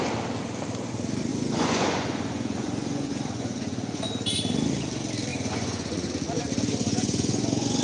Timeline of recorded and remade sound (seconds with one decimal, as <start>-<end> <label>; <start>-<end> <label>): 0.0-1.3 recorded; 1.3-4.1 remade; 4.1-5.3 recorded; 5.3-6.1 remade; 6.1-6.8 recorded; 6.8-7.8 remade